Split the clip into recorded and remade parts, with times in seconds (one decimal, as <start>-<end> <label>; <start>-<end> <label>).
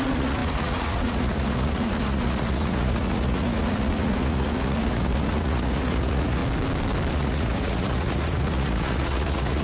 0.0-6.4 remade; 6.4-7.1 recorded; 7.1-9.6 remade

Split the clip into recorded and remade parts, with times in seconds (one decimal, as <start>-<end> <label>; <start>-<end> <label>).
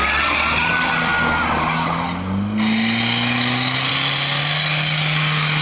0.0-5.6 recorded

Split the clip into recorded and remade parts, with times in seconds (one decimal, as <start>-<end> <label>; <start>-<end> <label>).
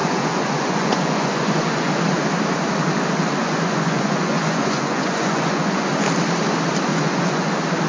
0.0-1.9 remade; 1.9-3.4 recorded; 3.4-5.9 remade; 5.9-6.9 recorded; 6.9-7.5 remade; 7.5-7.9 recorded